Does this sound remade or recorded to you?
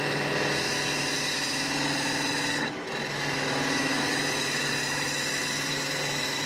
remade